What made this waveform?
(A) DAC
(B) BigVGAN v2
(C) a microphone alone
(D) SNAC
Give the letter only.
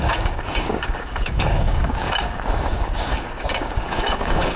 A